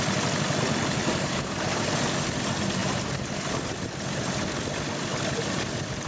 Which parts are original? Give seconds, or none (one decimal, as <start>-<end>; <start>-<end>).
0.0-1.0; 1.8-2.8; 3.5-6.1